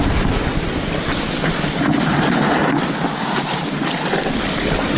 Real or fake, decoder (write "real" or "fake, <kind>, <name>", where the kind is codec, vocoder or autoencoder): real